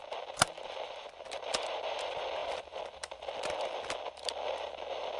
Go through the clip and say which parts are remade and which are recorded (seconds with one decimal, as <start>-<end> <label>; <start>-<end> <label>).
0.0-5.2 recorded